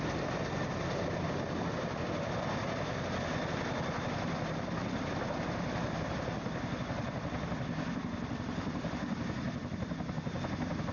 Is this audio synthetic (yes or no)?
no